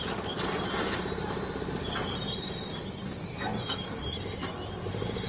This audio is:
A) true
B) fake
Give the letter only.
A